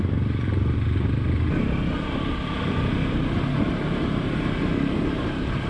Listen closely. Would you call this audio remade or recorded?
recorded